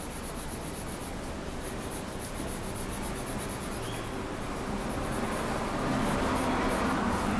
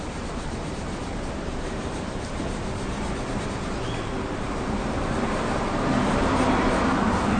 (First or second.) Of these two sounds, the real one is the first